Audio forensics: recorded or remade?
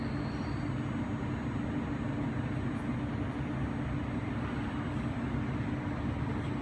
recorded